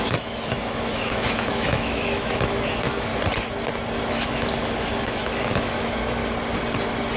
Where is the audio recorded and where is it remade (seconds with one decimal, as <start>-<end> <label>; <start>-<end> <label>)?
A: 0.0-3.1 remade; 3.1-4.1 recorded; 4.1-6.2 remade; 6.2-7.2 recorded

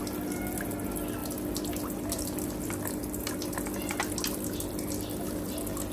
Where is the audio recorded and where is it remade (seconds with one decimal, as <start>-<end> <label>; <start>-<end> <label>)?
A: 0.0-5.9 recorded

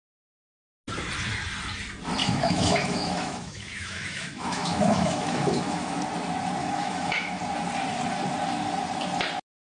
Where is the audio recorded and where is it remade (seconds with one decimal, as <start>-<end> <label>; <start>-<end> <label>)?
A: 0.0-2.2 recorded; 2.2-6.0 remade; 6.0-6.6 recorded; 6.6-7.4 remade; 7.4-9.6 recorded